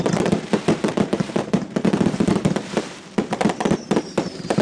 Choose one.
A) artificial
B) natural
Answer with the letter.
A